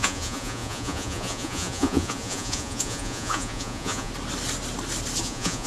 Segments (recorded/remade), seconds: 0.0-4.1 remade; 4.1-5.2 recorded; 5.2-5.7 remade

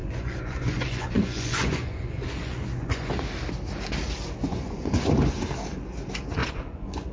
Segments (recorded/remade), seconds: 0.0-3.2 remade; 3.2-4.4 recorded; 4.4-5.0 remade; 5.0-6.4 recorded; 6.4-7.1 remade

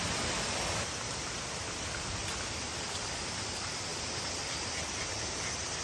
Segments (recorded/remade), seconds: 0.0-5.8 recorded

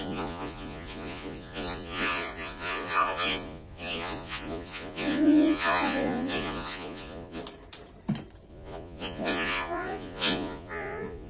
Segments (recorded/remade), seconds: 0.0-7.4 remade; 7.4-8.5 recorded; 8.5-11.3 remade

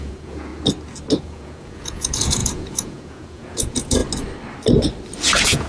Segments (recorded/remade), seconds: 0.0-0.5 remade; 0.5-1.2 recorded; 1.2-4.0 remade; 4.0-5.2 recorded; 5.2-5.7 remade

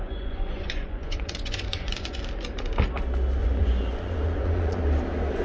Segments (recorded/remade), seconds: 0.0-2.2 remade; 2.2-3.4 recorded; 3.4-4.8 remade; 4.8-5.4 recorded

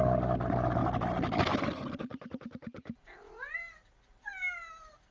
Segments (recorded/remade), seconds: 0.0-5.1 recorded